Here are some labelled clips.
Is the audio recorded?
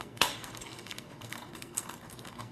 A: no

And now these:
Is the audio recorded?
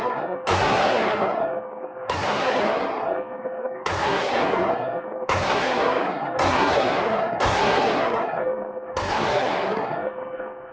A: no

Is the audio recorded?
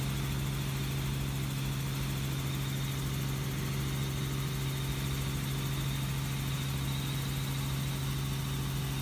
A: yes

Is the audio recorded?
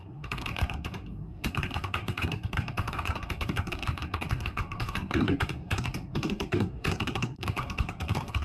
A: no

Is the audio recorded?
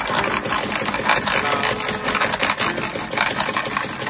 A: yes